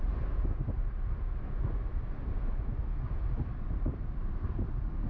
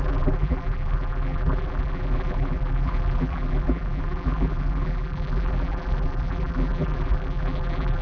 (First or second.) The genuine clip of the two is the first